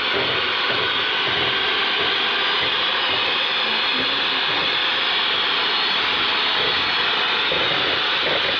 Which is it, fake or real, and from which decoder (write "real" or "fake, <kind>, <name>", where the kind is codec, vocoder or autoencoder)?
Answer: real